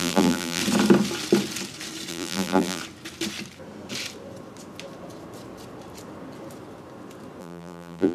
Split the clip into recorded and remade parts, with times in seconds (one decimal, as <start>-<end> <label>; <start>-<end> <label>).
0.0-0.6 remade; 0.6-2.1 recorded; 2.1-2.8 remade; 2.8-7.4 recorded; 7.4-8.1 remade

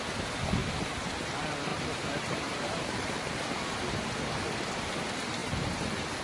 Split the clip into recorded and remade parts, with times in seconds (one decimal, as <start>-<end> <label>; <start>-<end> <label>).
0.0-1.7 recorded; 1.7-3.3 remade; 3.3-6.2 recorded

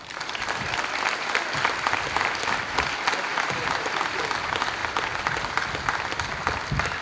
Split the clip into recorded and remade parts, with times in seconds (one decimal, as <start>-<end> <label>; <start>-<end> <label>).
0.0-3.3 recorded; 3.3-4.2 remade; 4.2-7.0 recorded

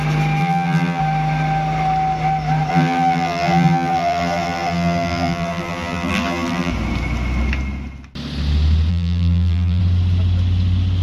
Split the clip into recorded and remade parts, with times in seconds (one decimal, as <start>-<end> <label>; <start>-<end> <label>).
0.0-0.4 recorded; 0.4-1.0 remade; 1.0-2.7 recorded; 2.7-6.7 remade; 6.7-8.9 recorded; 8.9-9.8 remade; 9.8-11.0 recorded

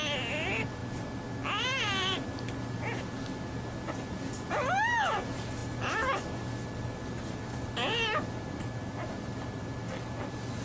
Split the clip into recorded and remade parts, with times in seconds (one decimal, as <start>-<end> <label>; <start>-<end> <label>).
0.0-10.6 recorded

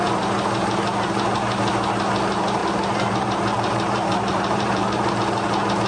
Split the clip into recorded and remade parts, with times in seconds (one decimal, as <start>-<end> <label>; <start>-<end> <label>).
0.0-2.6 recorded; 2.6-5.1 remade; 5.1-5.9 recorded